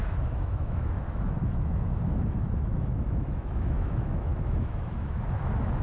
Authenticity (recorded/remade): remade